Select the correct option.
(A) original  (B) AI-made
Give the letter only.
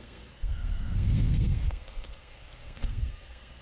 B